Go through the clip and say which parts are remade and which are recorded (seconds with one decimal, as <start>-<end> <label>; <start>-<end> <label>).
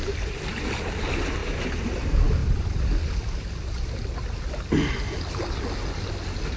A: 0.0-6.6 recorded